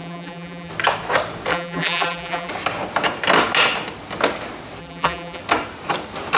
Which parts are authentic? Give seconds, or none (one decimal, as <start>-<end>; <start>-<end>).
0.7-1.5; 2.5-4.8; 5.4-6.4